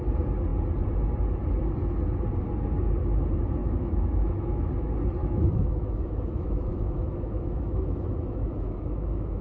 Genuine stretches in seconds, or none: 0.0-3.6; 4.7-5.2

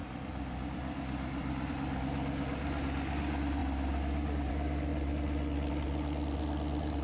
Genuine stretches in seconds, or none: 0.0-7.0